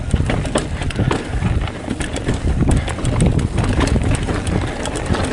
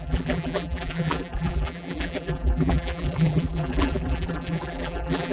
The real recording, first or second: first